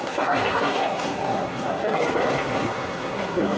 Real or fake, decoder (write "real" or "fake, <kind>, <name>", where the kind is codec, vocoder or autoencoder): fake, codec, SNAC